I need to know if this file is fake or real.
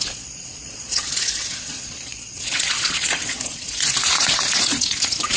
fake